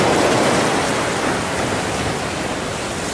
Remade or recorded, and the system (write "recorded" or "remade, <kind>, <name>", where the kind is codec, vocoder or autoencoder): recorded